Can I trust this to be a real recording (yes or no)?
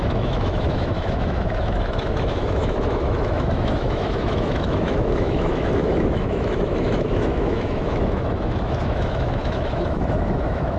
no